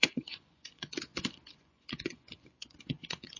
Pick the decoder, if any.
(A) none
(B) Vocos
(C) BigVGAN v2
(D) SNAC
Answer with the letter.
B